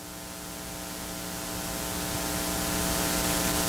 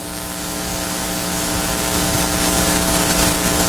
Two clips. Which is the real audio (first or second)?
first